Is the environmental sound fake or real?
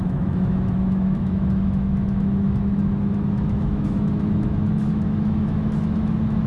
fake